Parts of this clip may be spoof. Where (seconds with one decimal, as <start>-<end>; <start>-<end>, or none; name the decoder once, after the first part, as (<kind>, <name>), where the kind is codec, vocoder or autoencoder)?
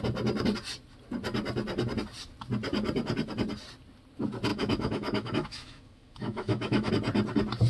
4.5-6.9 (autoencoder, DAC-VAE)